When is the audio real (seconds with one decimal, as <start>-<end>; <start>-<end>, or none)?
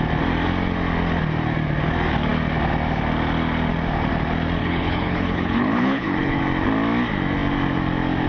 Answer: 0.0-4.6; 6.4-8.3